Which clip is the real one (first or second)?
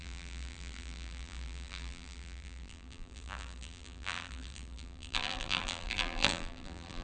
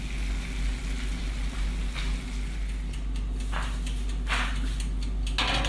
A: second